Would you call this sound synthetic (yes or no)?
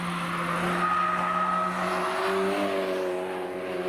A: no